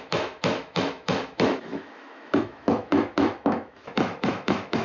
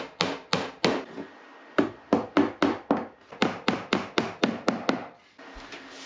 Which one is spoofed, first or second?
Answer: first